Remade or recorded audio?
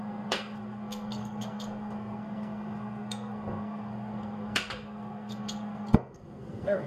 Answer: remade